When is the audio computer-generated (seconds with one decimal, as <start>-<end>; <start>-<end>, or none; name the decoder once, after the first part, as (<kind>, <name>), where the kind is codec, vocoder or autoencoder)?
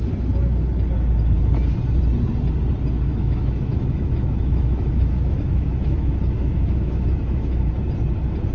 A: 3.1-7.7 (autoencoder, DAC-VAE)